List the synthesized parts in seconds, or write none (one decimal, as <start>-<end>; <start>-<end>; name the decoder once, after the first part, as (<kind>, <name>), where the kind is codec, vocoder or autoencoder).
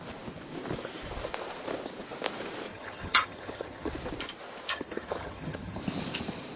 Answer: 2.7-3.9 (vocoder, HiFi-GAN); 4.7-5.8